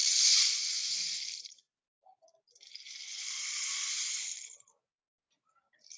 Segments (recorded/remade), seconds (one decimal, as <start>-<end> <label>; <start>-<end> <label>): 0.0-6.0 recorded